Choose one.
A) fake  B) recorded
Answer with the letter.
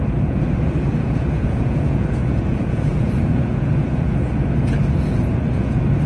A